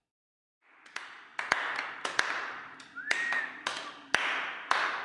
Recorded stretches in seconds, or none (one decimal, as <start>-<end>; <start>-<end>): 0.0-5.0